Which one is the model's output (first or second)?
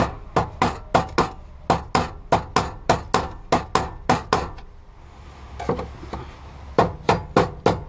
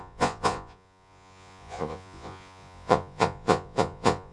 second